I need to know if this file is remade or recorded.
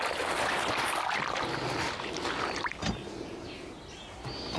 recorded